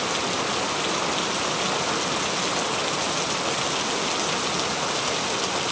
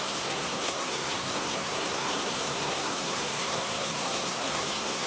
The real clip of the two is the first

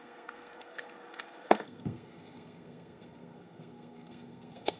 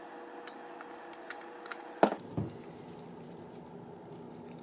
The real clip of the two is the second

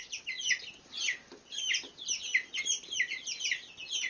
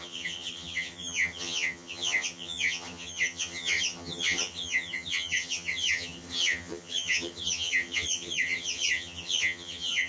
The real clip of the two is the first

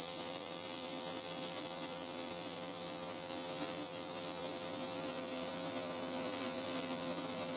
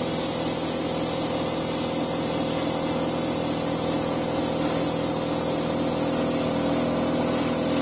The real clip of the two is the second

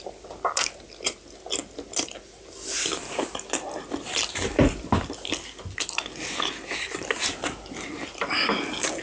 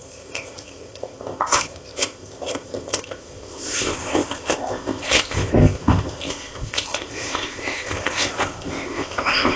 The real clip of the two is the first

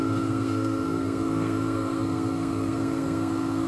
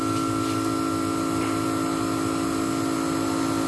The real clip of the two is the second